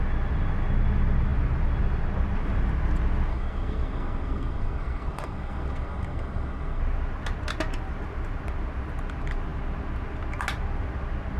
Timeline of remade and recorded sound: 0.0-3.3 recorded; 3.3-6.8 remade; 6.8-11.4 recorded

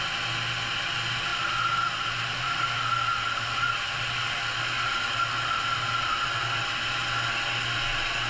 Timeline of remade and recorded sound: 0.0-8.3 recorded

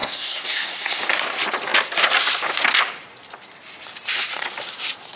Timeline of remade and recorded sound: 0.0-1.0 remade; 1.0-5.2 recorded